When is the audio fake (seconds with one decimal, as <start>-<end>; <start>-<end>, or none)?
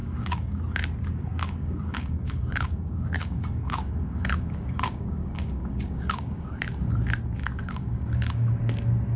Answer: 0.0-0.6; 1.3-6.6; 7.4-8.6